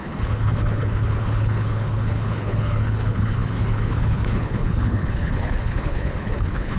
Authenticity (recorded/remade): remade